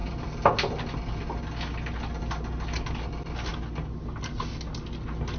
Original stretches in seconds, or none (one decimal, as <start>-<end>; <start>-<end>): 0.0-5.4